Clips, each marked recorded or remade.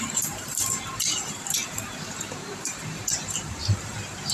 remade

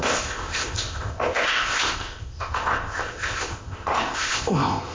remade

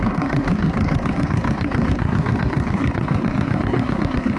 remade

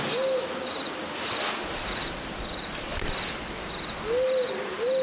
recorded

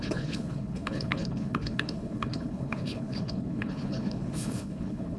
remade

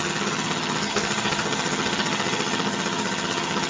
remade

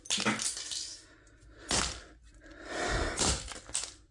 recorded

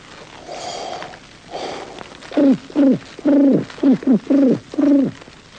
recorded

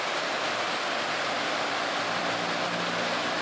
recorded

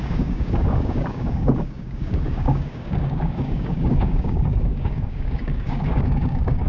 remade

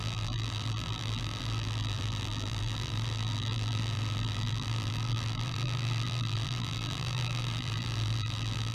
remade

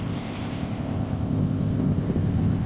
remade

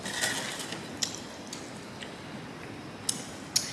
recorded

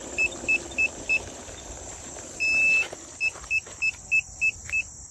recorded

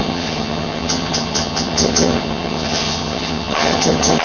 remade